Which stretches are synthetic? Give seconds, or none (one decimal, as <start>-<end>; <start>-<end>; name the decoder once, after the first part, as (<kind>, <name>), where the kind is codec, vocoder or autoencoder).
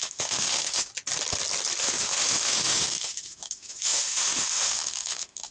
0.0-0.9 (autoencoder, DAC-VAE); 1.8-5.5